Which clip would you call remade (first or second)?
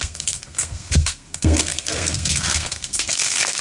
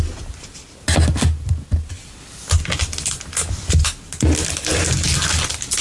first